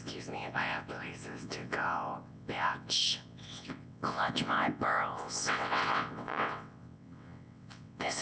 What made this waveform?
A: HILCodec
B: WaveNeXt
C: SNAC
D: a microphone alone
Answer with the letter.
B